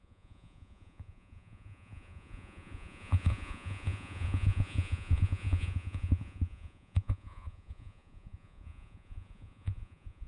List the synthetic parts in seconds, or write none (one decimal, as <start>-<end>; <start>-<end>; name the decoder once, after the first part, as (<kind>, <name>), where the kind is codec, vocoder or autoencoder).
0.0-10.3 (vocoder, Vocos)